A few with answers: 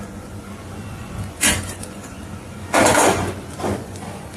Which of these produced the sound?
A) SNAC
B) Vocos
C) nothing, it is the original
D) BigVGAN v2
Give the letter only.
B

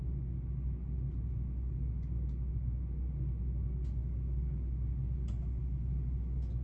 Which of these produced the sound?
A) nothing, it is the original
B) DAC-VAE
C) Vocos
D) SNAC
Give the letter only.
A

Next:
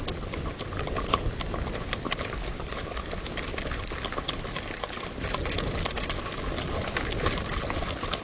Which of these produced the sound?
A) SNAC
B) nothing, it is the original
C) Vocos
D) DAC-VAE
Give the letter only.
B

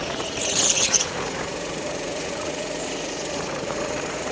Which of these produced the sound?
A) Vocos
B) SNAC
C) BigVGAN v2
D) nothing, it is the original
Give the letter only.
A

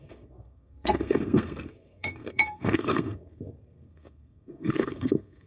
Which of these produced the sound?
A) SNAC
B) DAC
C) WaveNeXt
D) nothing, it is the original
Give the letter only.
A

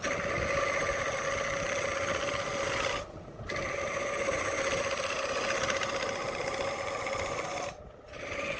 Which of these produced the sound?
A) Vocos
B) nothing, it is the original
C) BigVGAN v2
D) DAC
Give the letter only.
B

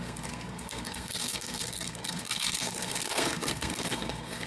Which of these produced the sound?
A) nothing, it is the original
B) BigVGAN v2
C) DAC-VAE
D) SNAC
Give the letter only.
D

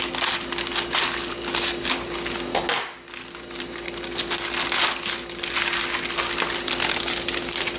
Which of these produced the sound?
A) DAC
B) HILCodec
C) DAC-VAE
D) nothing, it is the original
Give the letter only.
D